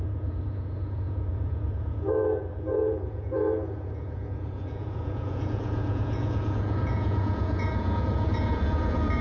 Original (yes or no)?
no